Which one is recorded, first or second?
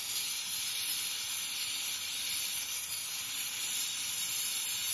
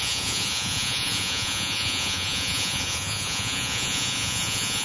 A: first